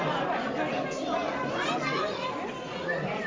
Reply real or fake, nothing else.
real